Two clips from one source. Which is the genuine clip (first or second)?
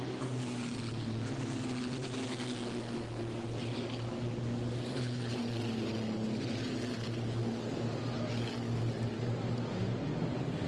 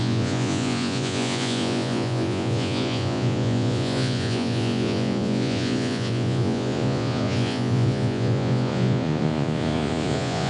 first